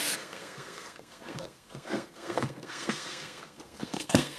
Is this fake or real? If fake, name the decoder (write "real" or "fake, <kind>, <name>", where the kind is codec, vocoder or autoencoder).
fake, codec, SNAC